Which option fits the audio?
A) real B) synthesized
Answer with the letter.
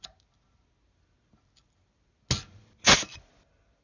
A